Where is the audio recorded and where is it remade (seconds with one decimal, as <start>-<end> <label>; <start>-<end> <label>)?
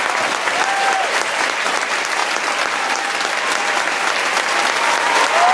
0.0-5.5 recorded